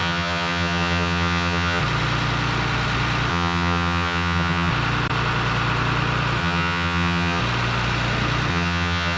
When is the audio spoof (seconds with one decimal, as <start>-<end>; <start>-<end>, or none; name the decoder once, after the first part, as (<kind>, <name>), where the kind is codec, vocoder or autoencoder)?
0.0-1.8 (vocoder, HiFi-GAN); 3.3-4.7; 6.4-7.4; 8.5-9.2